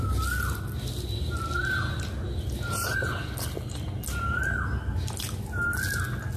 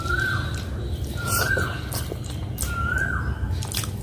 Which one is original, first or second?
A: first